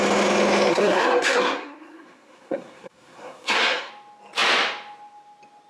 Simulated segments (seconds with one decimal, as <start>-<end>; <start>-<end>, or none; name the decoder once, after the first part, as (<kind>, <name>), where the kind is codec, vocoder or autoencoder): 0.7-3.9 (codec, SNAC)